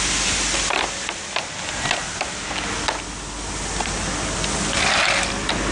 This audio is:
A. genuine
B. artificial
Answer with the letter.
A